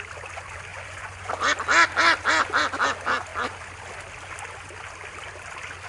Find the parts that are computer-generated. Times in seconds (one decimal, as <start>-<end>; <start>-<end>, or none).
0.7-1.3